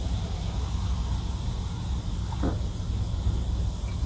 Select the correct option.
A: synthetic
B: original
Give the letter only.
B